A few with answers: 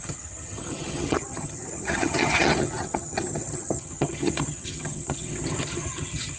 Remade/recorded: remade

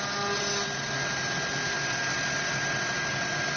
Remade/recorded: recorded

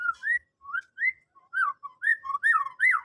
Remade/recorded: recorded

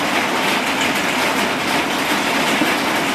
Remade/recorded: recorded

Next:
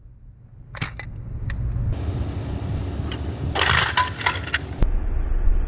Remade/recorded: recorded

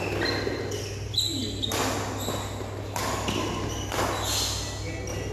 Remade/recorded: recorded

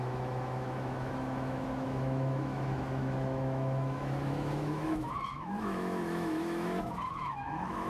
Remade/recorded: remade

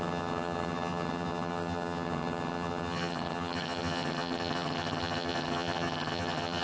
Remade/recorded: remade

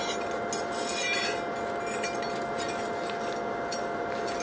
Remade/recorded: recorded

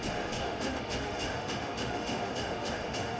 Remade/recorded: remade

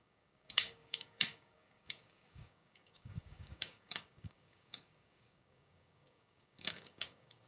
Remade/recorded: remade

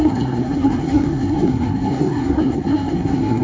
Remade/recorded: remade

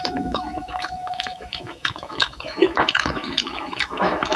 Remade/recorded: remade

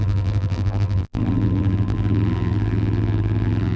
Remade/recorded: remade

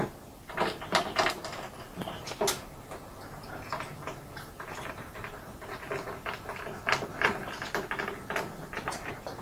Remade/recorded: recorded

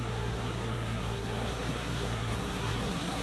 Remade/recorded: remade